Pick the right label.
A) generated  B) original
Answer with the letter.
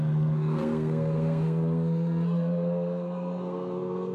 A